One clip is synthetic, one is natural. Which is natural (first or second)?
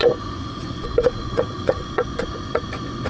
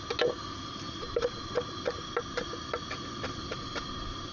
second